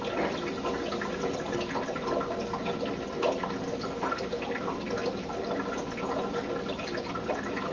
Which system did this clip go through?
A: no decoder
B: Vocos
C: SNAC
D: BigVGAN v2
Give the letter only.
A